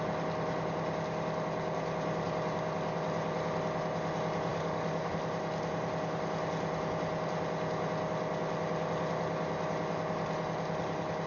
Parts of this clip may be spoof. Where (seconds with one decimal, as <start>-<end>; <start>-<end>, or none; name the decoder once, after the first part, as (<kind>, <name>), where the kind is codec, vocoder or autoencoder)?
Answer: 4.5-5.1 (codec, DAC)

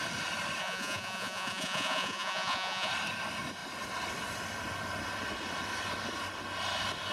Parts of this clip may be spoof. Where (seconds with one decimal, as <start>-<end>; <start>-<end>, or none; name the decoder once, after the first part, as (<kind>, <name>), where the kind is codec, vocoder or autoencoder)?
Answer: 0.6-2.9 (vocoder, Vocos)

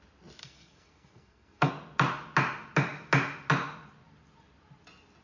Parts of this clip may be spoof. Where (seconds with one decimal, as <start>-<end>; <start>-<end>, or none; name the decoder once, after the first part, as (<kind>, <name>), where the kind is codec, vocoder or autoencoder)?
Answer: 0.4-1.7 (codec, SNAC)

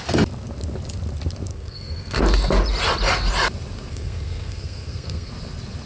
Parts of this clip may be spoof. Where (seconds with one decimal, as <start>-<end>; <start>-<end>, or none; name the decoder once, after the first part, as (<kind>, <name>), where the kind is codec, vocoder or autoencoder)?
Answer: 1.5-2.2 (codec, SNAC); 3.9-5.3